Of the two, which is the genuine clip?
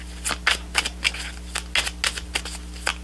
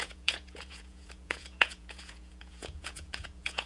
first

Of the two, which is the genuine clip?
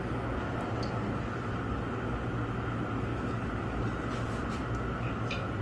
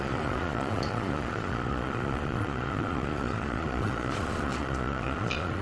first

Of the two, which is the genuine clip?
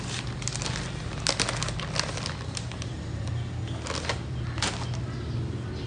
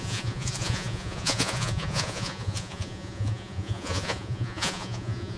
first